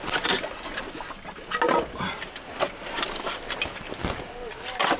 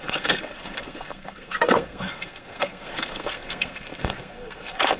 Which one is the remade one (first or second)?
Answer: second